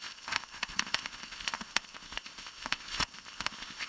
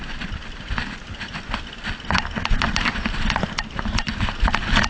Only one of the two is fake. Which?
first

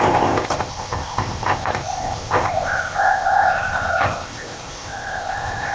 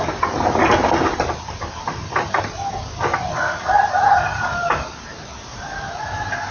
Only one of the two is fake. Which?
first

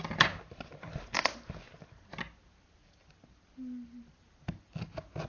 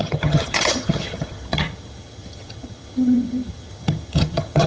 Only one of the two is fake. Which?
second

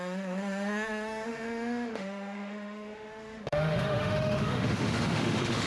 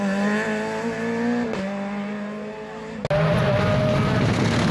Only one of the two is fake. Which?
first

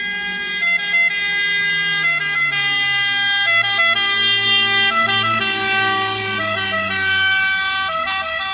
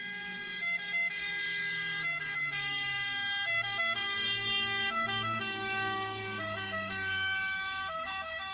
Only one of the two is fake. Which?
second